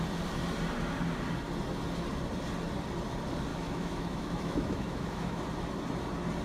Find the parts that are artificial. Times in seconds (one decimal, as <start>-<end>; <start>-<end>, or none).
3.5-5.4